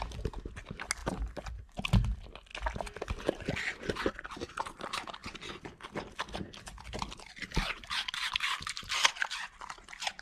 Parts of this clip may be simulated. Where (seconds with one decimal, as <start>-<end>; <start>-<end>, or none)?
none